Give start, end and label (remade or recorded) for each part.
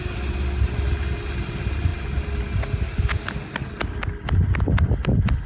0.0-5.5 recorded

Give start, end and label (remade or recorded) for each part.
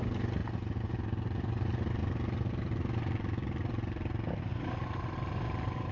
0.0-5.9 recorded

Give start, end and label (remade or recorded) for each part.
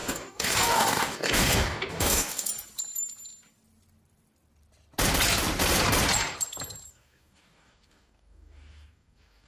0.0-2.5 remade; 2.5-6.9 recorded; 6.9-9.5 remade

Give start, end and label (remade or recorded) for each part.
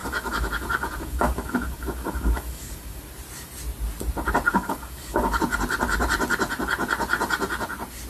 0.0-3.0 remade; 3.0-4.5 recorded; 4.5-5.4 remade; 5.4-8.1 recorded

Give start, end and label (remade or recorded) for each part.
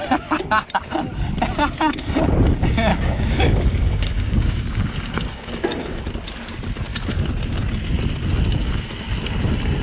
0.0-2.9 recorded; 2.9-6.0 remade; 6.0-9.8 recorded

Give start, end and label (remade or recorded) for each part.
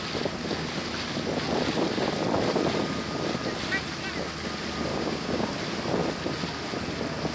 0.0-4.9 recorded; 4.9-5.5 remade; 5.5-7.3 recorded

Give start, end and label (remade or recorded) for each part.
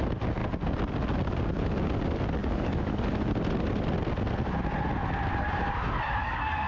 0.0-2.4 recorded; 2.4-3.0 remade; 3.0-6.2 recorded; 6.2-6.7 remade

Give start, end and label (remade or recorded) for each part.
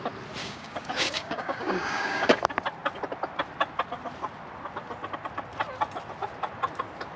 0.0-0.4 recorded; 0.4-2.4 remade; 2.4-7.2 recorded